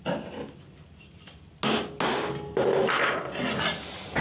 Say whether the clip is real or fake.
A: real